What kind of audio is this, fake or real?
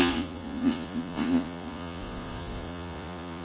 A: fake